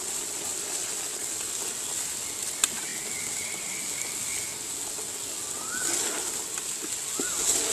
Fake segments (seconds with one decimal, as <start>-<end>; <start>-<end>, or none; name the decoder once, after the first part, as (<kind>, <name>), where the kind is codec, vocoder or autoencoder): none